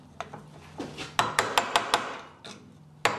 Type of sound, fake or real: real